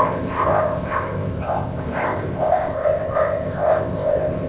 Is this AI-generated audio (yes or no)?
yes